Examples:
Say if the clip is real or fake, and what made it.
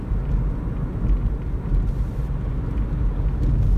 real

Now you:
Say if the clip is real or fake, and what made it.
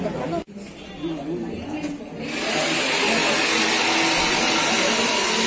real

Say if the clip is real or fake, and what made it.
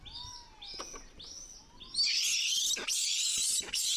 real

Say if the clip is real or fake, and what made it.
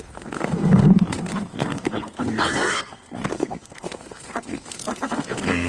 fake, codec, SNAC